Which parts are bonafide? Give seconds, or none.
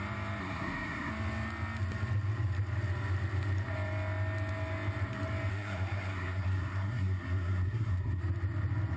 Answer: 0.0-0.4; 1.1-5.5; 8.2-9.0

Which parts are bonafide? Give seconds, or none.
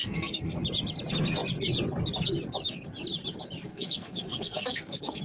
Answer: 0.6-3.7